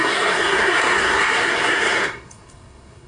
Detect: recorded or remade remade